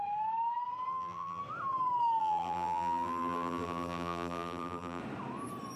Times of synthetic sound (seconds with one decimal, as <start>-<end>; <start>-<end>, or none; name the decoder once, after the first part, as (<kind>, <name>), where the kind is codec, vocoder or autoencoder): 0.9-1.4 (vocoder, BigVGAN v2); 2.2-5.0